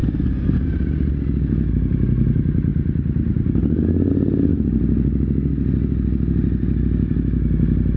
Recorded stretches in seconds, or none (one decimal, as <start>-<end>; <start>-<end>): 0.0-8.0